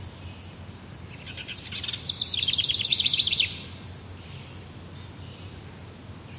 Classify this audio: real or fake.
real